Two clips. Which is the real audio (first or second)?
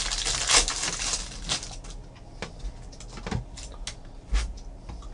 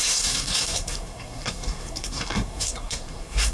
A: first